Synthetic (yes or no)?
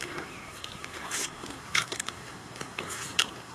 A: yes